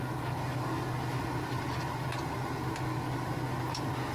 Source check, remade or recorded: recorded